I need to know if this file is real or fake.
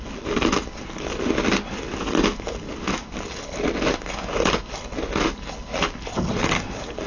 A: real